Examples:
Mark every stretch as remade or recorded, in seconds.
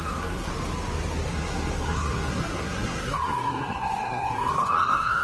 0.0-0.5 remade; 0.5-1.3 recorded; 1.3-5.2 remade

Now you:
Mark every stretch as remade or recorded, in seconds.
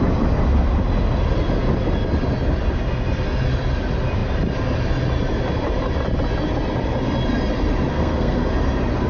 0.0-7.9 recorded; 7.9-8.5 remade; 8.5-9.1 recorded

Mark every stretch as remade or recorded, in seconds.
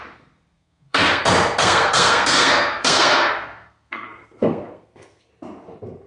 0.0-0.5 recorded; 0.5-1.2 remade; 1.2-1.6 recorded; 1.6-5.3 remade; 5.3-6.1 recorded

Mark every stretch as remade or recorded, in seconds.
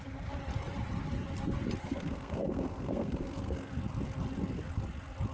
0.0-1.8 recorded; 1.8-3.7 remade; 3.7-5.3 recorded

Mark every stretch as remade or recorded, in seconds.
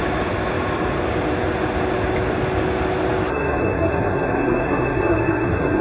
0.0-3.3 recorded; 3.3-5.8 remade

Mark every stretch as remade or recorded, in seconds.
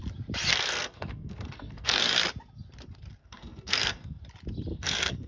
0.0-0.5 recorded; 0.5-2.0 remade; 2.0-3.2 recorded; 3.2-4.2 remade; 4.2-4.7 recorded; 4.7-5.3 remade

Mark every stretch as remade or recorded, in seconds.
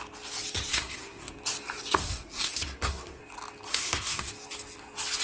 0.0-0.7 recorded; 0.7-1.3 remade; 1.3-2.0 recorded; 2.0-3.2 remade; 3.2-3.7 recorded; 3.7-4.3 remade; 4.3-5.2 recorded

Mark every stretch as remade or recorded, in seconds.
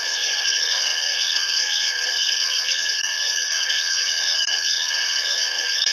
0.0-5.9 remade